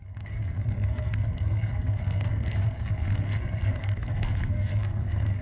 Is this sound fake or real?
fake